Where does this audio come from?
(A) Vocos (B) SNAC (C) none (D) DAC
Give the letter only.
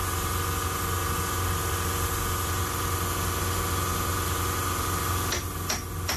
C